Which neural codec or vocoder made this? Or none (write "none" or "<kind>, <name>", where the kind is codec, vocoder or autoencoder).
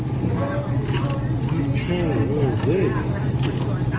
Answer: none